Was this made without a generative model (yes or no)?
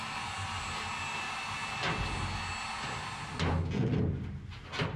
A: yes